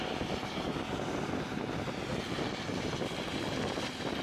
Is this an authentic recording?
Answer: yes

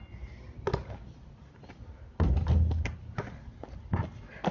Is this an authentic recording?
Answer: yes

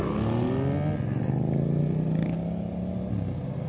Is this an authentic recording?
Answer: yes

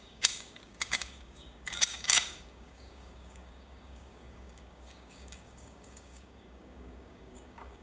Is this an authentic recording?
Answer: no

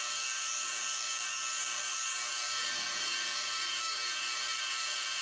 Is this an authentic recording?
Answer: no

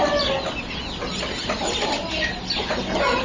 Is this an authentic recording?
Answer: yes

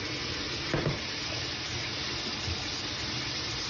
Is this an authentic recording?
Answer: yes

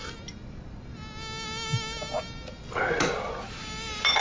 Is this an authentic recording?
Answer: yes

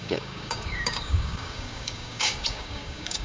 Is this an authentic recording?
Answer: no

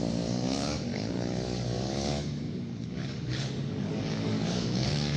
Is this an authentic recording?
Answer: no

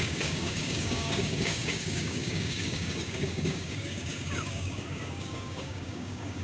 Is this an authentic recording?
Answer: no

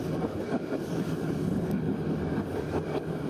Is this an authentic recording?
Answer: no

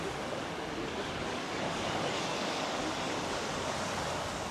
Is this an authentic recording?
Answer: no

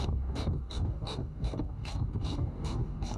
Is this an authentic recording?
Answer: no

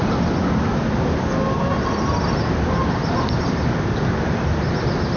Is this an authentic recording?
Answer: yes